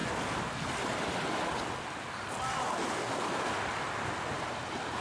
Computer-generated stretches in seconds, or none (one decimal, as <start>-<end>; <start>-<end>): none